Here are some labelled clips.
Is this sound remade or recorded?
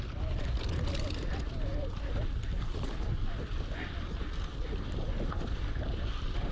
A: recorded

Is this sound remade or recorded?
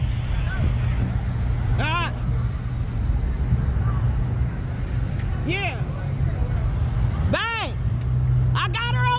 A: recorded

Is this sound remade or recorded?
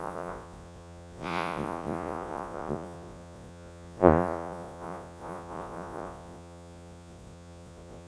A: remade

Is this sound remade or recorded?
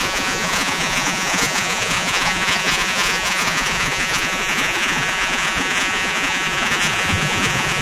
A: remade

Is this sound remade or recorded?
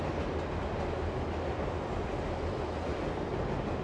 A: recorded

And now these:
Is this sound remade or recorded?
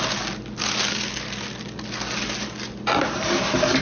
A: recorded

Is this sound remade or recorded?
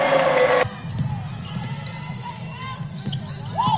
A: recorded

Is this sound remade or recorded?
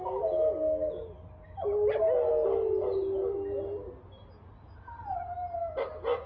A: recorded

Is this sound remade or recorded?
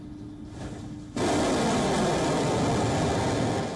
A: recorded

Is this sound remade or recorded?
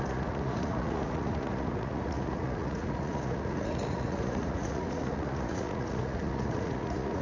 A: remade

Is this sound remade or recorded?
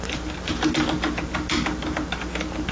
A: recorded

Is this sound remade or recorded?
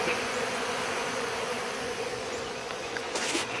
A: remade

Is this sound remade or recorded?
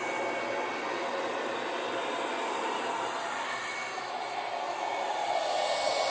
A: recorded